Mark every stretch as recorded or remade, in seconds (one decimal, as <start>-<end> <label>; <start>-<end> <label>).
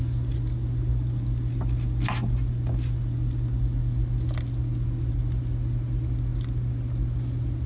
0.0-7.7 recorded